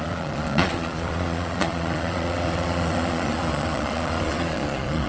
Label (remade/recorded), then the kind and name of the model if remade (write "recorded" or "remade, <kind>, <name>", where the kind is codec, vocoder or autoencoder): remade, vocoder, Vocos